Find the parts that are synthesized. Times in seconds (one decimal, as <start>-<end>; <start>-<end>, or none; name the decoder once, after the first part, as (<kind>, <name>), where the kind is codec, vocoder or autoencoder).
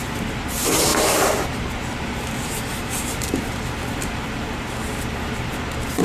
0.0-6.0 (vocoder, BigVGAN v2)